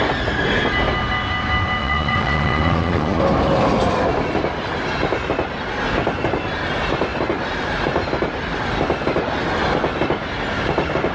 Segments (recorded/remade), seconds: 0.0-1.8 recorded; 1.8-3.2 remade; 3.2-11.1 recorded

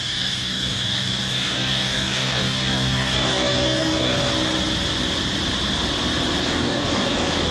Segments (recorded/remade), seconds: 0.0-4.3 remade; 4.3-6.4 recorded; 6.4-7.5 remade

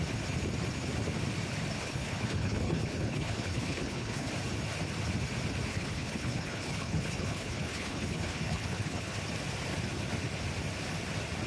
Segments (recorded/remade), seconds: 0.0-1.8 recorded; 1.8-4.3 remade; 4.3-5.7 recorded; 5.7-9.2 remade; 9.2-11.5 recorded

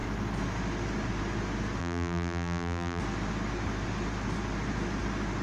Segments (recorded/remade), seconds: 0.0-1.8 recorded; 1.8-3.0 remade; 3.0-5.4 recorded